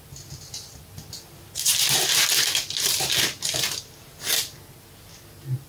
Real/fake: real